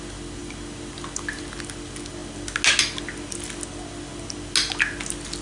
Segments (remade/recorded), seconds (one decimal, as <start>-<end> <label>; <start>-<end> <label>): 0.0-5.4 recorded